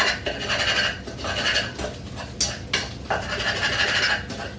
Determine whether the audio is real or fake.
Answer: real